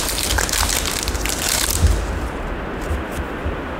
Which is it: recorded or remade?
recorded